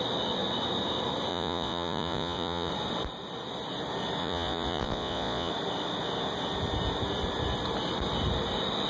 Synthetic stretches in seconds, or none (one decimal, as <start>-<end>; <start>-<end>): 1.3-2.7; 4.2-5.5